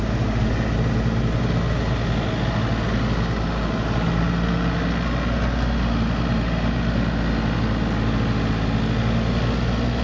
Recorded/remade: recorded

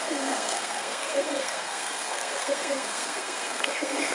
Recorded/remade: remade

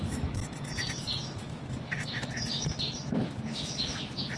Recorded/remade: remade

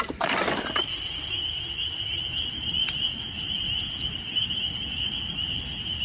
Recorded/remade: recorded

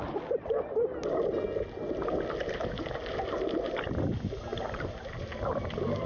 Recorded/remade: recorded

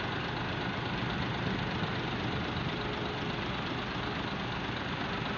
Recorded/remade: recorded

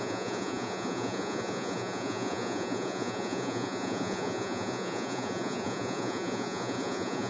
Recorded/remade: remade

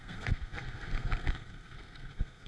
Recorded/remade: remade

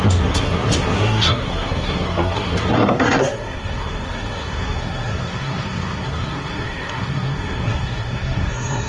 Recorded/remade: remade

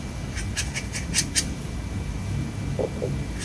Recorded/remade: recorded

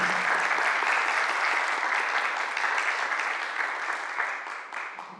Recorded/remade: recorded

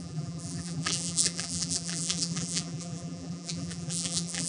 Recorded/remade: remade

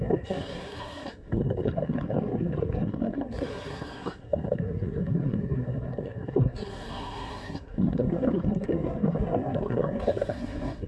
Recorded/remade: remade